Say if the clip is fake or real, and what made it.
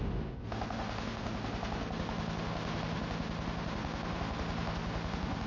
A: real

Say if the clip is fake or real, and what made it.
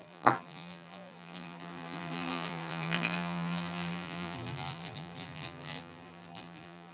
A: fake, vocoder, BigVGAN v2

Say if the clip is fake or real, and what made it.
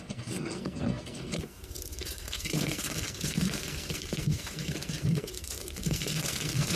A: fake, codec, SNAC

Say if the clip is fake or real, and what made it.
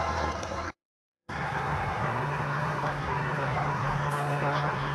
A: fake, codec, SNAC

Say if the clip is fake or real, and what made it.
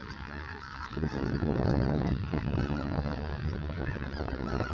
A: fake, vocoder, WaveNeXt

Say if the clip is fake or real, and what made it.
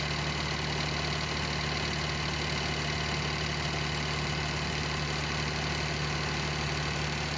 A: real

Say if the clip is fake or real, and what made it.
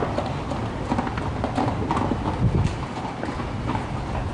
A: real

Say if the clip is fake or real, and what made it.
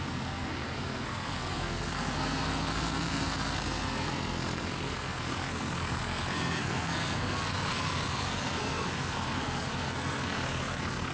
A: fake, codec, SNAC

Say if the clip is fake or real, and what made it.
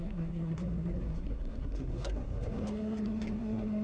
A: fake, codec, SNAC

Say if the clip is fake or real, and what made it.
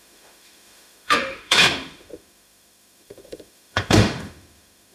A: fake, autoencoder, DAC-VAE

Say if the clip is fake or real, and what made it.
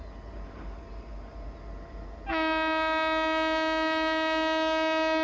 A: real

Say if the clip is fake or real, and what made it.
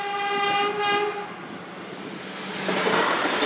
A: real